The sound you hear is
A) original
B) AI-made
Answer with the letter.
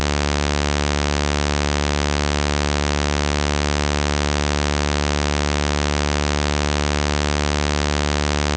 A